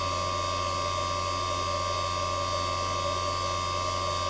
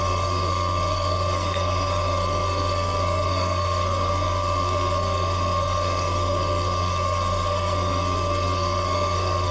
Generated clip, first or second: second